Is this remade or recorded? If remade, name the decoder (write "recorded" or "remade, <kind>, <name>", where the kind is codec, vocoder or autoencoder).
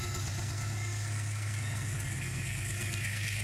remade, codec, SNAC